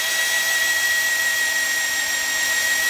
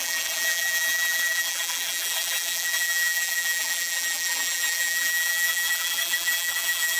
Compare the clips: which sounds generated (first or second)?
second